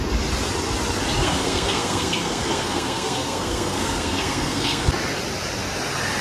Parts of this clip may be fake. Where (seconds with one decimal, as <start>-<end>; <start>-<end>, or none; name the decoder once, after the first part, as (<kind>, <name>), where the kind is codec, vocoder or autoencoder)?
1.2-4.9 (codec, SNAC)